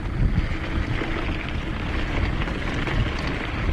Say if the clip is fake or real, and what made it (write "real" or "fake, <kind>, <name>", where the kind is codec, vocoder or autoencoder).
real